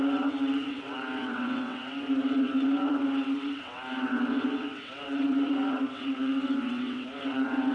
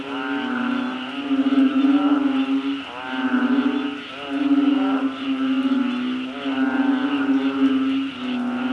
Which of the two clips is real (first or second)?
second